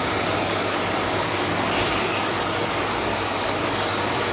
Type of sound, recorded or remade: remade